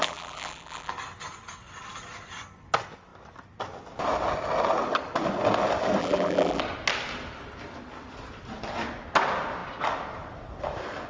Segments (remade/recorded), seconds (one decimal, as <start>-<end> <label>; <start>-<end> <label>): 0.0-0.9 remade; 0.9-6.0 recorded; 6.0-6.6 remade; 6.6-11.1 recorded